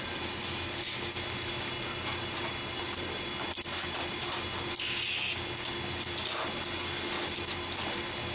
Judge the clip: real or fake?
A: real